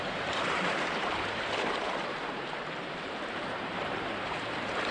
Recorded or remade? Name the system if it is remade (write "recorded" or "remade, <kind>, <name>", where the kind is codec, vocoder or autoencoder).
remade, vocoder, BigVGAN v2